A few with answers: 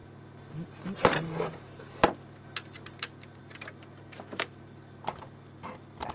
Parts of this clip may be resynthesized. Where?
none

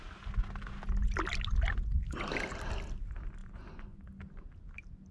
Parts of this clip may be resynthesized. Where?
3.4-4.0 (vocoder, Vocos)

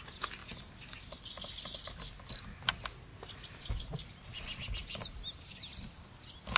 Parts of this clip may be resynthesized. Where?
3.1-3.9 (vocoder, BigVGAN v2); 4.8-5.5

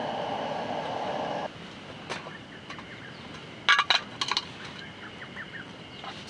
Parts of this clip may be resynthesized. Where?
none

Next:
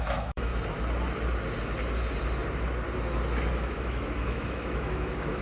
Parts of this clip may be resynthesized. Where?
0.0-0.5 (autoencoder, DAC-VAE); 3.5-5.4

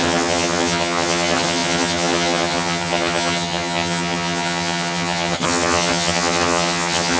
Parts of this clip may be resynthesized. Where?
0.0-7.2 (vocoder, HiFi-GAN)

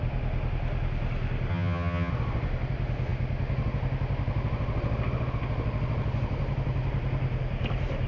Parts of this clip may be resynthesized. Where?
1.5-2.1 (vocoder, HiFi-GAN)

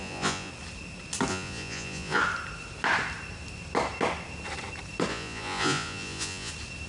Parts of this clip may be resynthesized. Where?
0.0-0.5 (vocoder, Vocos); 1.3-2.2; 5.1-6.5